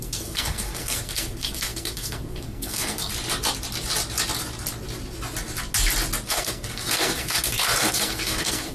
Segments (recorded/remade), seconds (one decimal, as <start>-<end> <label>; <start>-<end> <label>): 0.0-3.1 remade; 3.1-6.3 recorded; 6.3-8.7 remade